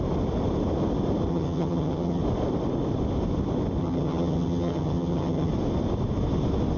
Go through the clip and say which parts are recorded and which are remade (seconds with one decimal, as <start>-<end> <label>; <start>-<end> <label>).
0.0-1.3 recorded; 1.3-2.2 remade; 2.2-3.8 recorded; 3.8-5.5 remade; 5.5-6.8 recorded